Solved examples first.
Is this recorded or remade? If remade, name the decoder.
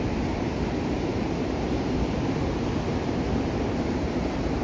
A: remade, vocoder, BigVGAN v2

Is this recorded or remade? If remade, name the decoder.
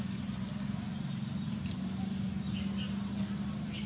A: recorded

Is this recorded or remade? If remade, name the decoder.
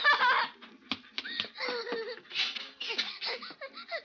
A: recorded